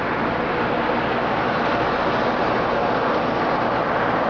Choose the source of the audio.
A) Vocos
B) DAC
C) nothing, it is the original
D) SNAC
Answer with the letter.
C